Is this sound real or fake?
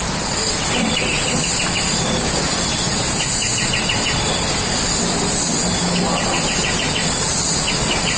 real